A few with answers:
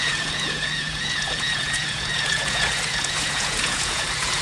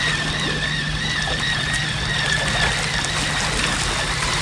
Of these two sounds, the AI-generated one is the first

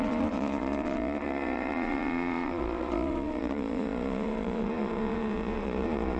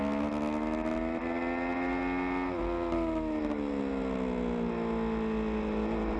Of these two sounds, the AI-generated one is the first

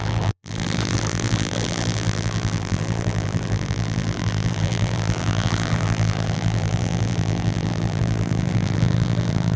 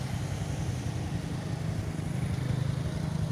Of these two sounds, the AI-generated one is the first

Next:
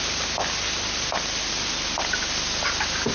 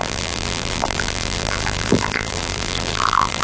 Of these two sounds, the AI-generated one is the second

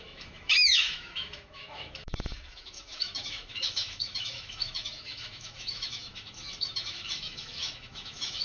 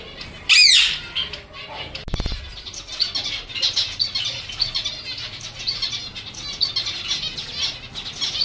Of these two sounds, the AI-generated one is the first